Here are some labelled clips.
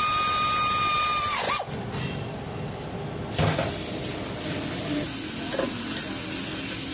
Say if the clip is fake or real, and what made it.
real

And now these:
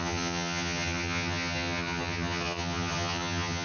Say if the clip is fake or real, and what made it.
fake, vocoder, HiFi-GAN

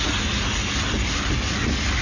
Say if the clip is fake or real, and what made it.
real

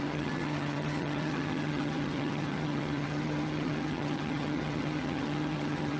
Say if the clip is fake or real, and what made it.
fake, vocoder, HiFi-GAN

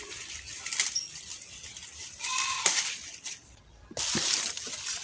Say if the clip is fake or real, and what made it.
real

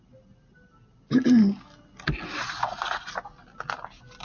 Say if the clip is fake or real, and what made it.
real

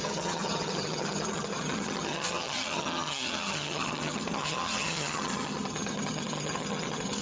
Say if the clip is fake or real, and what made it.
fake, vocoder, HiFi-GAN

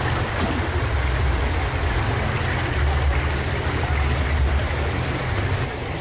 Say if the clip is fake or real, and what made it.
real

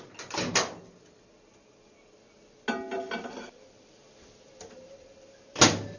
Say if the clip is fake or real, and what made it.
real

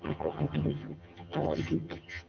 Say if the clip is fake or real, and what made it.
fake, vocoder, HiFi-GAN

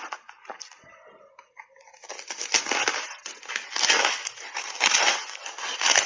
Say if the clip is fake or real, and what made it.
real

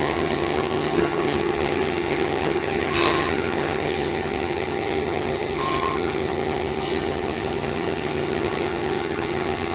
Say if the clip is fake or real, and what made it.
fake, vocoder, HiFi-GAN